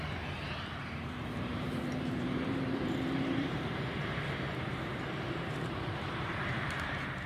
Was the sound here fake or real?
fake